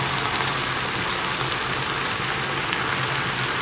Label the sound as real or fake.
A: real